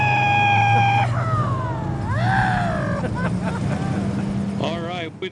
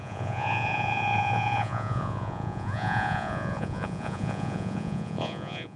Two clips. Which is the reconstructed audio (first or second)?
second